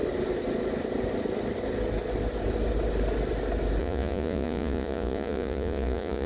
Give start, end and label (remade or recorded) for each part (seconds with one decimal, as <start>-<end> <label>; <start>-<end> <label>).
0.0-3.8 recorded; 3.8-6.3 remade